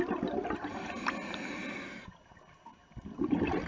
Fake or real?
real